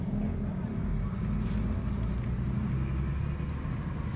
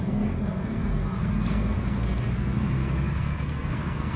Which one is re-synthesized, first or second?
second